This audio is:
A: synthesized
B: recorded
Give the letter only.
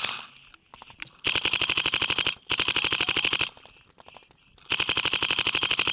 B